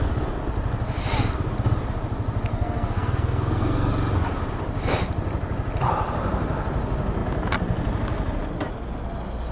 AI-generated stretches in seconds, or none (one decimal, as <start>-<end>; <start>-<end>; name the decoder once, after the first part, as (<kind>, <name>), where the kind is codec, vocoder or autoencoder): 2.5-3.9 (codec, SNAC)